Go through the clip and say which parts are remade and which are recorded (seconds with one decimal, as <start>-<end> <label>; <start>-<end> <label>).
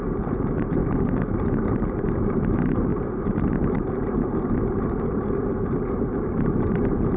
0.0-0.8 remade; 0.8-1.8 recorded; 1.8-7.2 remade